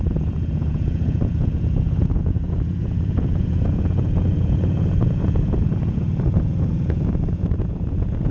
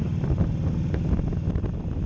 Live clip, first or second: second